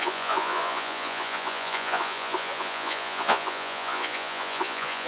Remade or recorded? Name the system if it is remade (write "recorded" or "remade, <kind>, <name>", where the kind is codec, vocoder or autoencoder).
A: remade, vocoder, Vocos